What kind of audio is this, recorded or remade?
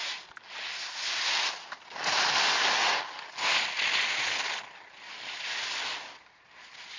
recorded